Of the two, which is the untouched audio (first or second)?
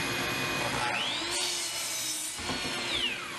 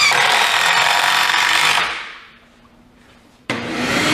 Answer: first